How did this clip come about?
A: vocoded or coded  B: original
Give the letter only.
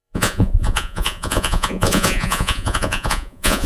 A